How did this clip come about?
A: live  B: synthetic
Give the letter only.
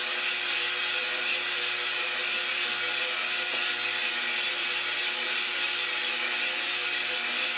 A